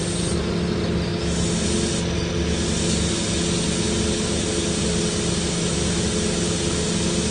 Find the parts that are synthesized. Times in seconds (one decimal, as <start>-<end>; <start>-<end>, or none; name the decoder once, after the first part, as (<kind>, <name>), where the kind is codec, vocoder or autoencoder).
none